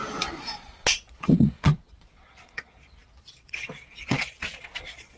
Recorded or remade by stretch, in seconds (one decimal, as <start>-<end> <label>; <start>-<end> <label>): 0.0-0.9 recorded; 0.9-5.2 remade